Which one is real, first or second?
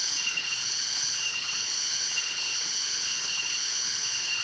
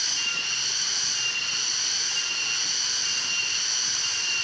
second